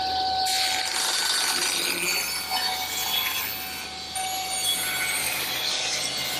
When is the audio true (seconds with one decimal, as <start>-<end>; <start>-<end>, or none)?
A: 0.0-5.2; 6.0-6.4